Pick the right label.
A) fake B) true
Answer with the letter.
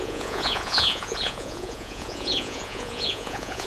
A